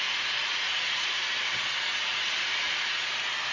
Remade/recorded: recorded